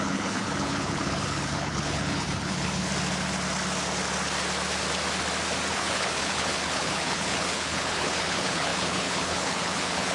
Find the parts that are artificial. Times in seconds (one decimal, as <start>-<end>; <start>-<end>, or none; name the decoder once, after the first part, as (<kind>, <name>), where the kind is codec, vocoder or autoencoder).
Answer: 0.0-2.9 (codec, HILCodec); 5.7-10.1